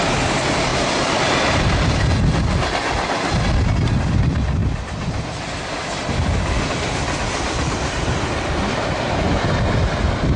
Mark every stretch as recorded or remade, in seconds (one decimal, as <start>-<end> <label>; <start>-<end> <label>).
0.0-0.7 recorded; 0.7-2.1 remade; 2.1-4.6 recorded; 4.6-8.3 remade; 8.3-10.4 recorded